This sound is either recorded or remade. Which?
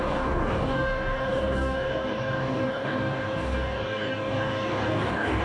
remade